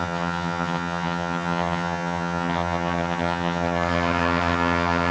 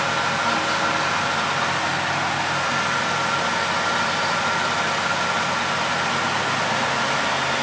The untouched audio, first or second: second